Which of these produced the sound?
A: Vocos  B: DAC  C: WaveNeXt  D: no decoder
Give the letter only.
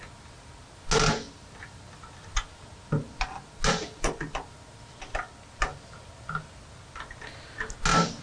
D